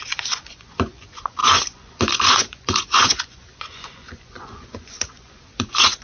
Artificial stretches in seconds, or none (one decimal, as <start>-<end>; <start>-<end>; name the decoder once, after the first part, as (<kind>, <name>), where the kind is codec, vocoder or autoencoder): 0.0-6.0 (vocoder, Vocos)